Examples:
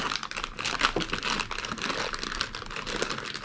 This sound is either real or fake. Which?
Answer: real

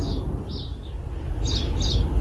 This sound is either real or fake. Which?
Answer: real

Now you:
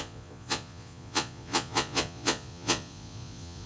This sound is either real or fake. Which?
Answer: fake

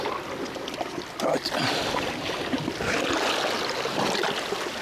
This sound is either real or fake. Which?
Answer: real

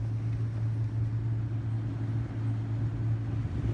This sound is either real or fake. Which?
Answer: real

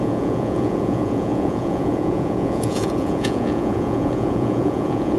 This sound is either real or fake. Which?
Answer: fake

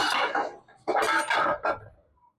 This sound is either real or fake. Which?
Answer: real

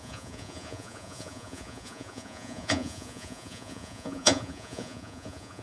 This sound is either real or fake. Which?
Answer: fake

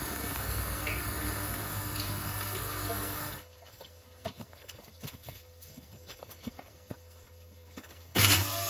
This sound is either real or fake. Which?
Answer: fake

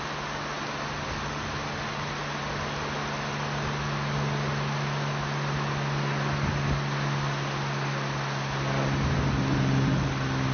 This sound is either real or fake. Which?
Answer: real